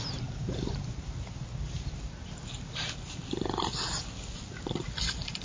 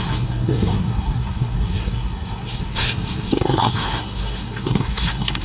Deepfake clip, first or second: second